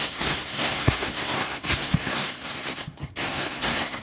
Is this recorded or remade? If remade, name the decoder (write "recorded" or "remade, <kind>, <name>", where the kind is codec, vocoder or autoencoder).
remade, codec, SNAC